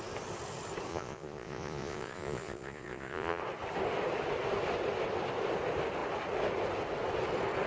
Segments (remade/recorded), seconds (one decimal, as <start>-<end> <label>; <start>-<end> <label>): 0.0-0.9 recorded; 0.9-3.4 remade; 3.4-7.7 recorded